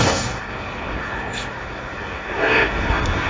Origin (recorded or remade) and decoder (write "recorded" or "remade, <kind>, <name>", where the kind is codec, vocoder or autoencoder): remade, codec, SNAC